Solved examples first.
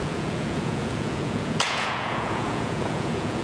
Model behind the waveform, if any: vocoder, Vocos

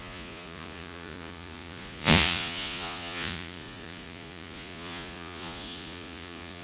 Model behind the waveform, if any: vocoder, Vocos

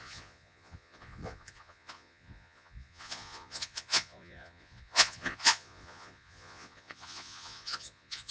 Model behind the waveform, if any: vocoder, Vocos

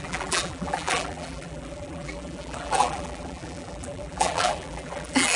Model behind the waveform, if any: vocoder, BigVGAN v2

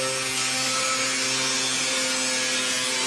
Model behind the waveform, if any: none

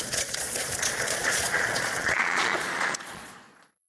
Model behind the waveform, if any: vocoder, Vocos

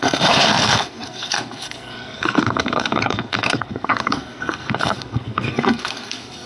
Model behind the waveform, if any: codec, SNAC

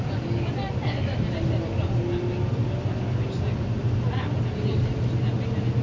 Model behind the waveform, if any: none